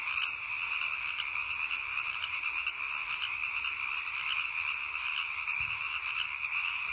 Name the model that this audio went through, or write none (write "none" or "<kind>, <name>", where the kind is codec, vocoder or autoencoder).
none